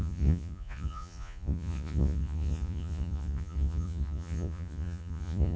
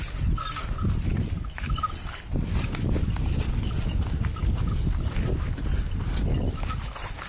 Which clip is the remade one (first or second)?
first